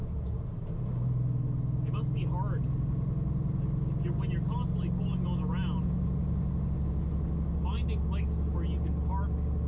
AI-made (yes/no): no